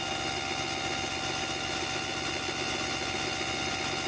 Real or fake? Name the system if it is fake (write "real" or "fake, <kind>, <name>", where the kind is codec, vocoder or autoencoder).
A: real